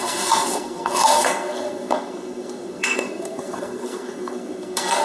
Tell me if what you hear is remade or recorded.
remade